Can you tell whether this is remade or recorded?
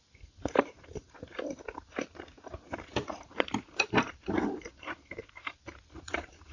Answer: recorded